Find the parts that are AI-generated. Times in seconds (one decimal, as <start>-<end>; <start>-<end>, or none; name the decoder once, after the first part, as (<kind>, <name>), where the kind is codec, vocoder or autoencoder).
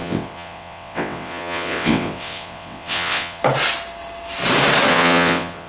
0.0-3.4 (vocoder, WaveNeXt); 4.9-5.7